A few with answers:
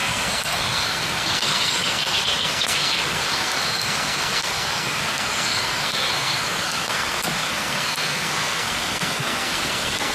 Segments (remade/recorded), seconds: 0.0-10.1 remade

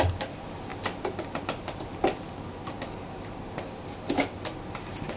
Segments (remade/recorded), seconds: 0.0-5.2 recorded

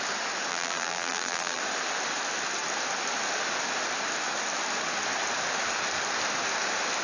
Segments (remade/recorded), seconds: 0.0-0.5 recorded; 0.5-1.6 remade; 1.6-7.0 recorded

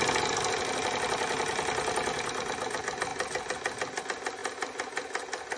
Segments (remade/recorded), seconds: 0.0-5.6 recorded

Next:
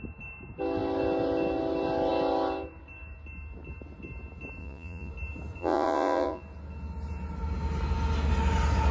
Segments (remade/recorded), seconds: 0.0-4.6 recorded; 4.6-5.1 remade; 5.1-5.6 recorded; 5.6-6.4 remade; 6.4-8.9 recorded

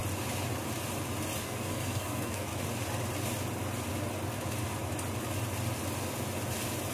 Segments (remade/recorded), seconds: 0.0-1.4 recorded; 1.4-2.5 remade; 2.5-6.9 recorded

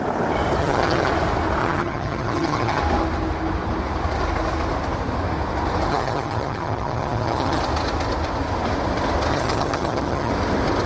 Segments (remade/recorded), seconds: 0.0-0.6 recorded; 0.6-1.1 remade; 1.1-1.6 recorded; 1.6-2.8 remade; 2.8-5.9 recorded; 5.9-7.6 remade; 7.6-9.3 recorded; 9.3-10.3 remade; 10.3-10.9 recorded